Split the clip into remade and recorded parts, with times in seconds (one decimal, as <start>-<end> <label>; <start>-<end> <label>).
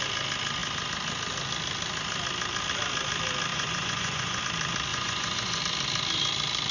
0.0-3.5 recorded; 3.5-4.4 remade; 4.4-4.9 recorded; 4.9-5.6 remade; 5.6-6.7 recorded